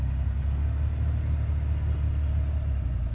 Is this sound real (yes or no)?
yes